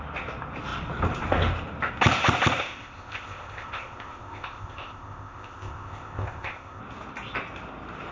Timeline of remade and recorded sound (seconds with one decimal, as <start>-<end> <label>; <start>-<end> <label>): 0.0-2.6 recorded; 2.6-6.8 remade; 6.8-8.1 recorded